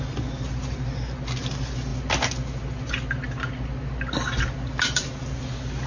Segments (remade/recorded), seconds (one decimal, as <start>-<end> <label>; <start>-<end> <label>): 0.0-5.9 recorded